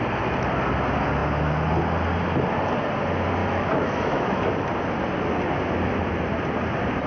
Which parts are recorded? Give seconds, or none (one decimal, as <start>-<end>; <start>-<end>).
0.0-3.4; 4.5-7.1